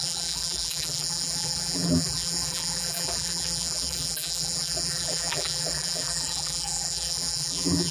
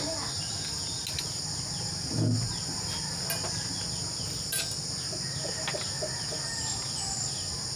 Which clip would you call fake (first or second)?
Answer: first